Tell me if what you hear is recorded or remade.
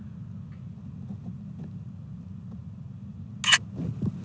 recorded